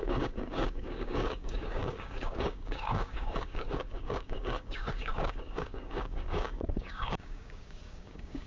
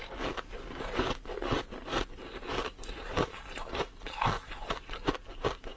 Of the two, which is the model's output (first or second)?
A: first